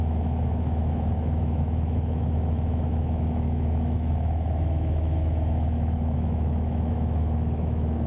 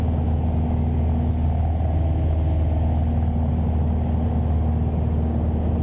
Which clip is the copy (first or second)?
first